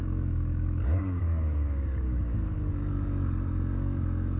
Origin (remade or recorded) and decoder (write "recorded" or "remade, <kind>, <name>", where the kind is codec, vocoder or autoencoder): remade, codec, DAC